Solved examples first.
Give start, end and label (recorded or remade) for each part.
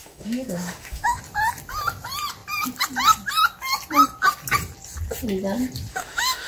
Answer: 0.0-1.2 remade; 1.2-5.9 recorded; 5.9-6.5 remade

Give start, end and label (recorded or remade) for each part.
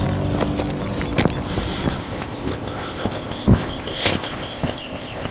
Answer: 0.0-2.0 recorded; 2.0-5.3 remade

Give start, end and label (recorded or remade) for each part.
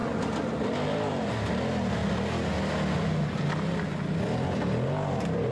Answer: 0.0-5.5 recorded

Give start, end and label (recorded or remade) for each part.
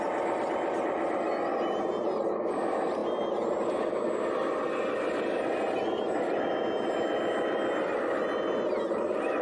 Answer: 0.0-9.4 recorded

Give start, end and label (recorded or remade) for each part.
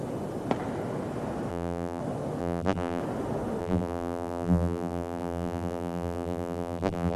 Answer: 0.0-1.5 recorded; 1.5-2.0 remade; 2.0-2.4 recorded; 2.4-3.0 remade; 3.0-3.6 recorded; 3.6-7.2 remade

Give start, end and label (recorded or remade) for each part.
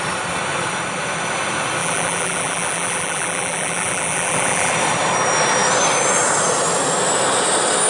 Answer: 0.0-1.8 recorded; 1.8-4.7 remade; 4.7-7.9 recorded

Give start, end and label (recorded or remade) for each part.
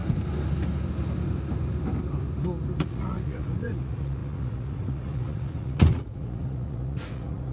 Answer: 0.0-2.8 recorded; 2.8-7.5 remade